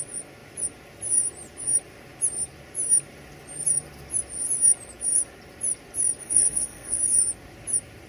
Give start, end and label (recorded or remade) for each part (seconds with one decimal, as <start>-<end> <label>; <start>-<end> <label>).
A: 0.0-6.2 recorded; 6.2-7.0 remade; 7.0-8.1 recorded